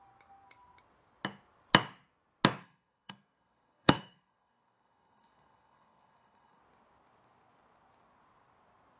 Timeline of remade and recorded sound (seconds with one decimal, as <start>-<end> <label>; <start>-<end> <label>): 0.0-2.6 recorded; 2.6-6.6 remade; 6.6-9.0 recorded